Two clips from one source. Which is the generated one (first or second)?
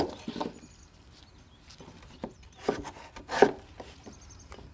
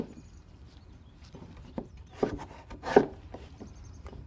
second